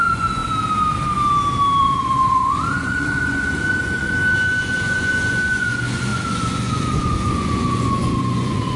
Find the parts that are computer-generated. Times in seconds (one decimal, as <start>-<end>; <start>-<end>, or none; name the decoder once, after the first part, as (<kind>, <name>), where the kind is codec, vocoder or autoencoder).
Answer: 0.0-0.4 (vocoder, Vocos); 1.8-8.8